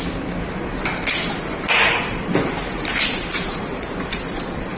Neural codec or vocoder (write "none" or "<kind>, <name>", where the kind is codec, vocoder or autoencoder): vocoder, BigVGAN v2